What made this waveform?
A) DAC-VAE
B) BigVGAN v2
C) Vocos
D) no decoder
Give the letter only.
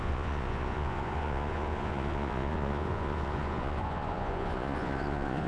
C